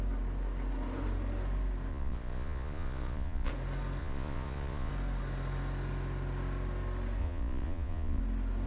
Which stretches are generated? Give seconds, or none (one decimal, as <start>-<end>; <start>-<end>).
1.9-3.5; 4.0-4.9; 7.2-8.2